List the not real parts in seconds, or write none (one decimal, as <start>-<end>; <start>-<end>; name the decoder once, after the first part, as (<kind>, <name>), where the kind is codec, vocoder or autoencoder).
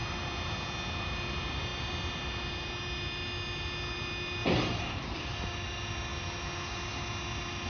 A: none